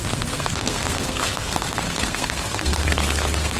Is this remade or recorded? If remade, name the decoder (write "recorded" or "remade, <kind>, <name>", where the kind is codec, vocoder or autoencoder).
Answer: remade, codec, SNAC